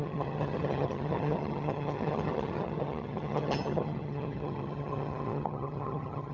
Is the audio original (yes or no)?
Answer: no